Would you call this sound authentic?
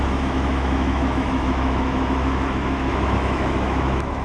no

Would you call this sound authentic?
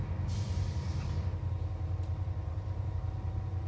yes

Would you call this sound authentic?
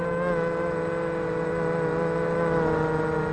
yes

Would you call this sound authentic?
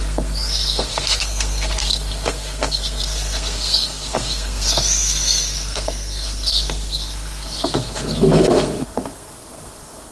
no